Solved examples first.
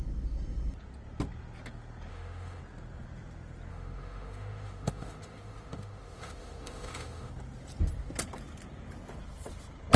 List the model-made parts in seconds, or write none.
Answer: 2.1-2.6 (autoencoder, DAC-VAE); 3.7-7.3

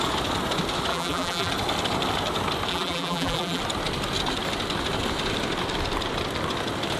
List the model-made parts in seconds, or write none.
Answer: 0.9-1.5 (vocoder, BigVGAN v2); 2.7-3.6

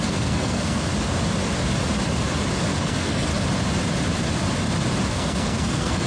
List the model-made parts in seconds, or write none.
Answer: 0.0-0.9 (codec, SNAC); 2.8-3.3; 5.1-6.1

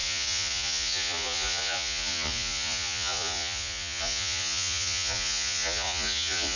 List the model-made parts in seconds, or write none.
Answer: 0.0-6.6 (vocoder, Vocos)

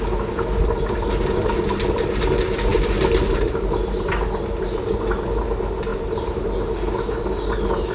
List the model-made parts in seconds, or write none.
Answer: none